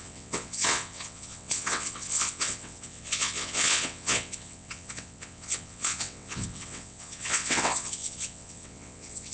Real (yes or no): no